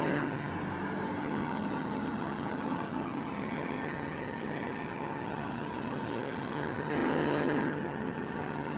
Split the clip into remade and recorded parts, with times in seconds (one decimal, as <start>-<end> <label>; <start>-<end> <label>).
0.0-0.5 remade; 0.5-1.2 recorded; 1.2-8.8 remade